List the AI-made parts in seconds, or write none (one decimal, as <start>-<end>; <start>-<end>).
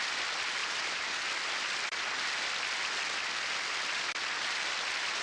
0.6-1.2